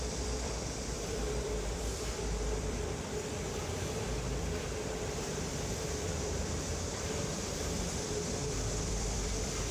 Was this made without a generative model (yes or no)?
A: no